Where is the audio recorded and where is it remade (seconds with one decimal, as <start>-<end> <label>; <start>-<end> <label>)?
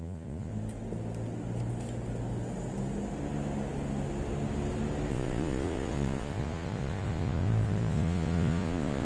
0.0-0.5 remade; 0.5-5.1 recorded; 5.1-9.0 remade